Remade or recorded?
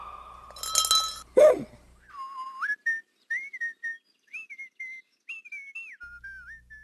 recorded